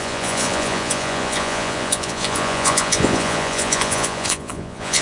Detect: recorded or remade remade